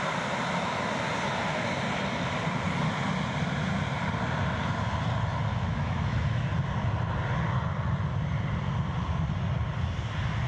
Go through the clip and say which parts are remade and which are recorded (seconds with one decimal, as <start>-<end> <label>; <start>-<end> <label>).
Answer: 0.0-5.5 recorded; 5.5-6.5 remade; 6.5-10.5 recorded